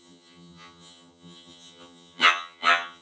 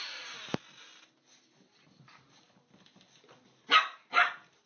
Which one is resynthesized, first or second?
first